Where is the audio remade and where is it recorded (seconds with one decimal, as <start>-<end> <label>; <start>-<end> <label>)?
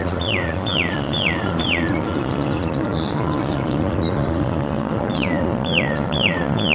0.0-6.7 remade